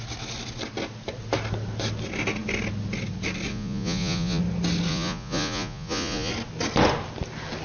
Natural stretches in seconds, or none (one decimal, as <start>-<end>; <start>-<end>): 0.0-3.5; 4.4-4.9; 6.3-7.6